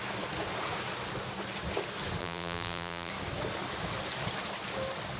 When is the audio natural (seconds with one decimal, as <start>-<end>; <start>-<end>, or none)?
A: 0.0-2.2; 3.1-5.2